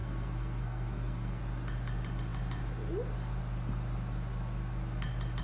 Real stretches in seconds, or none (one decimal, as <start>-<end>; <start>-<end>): 1.4-5.4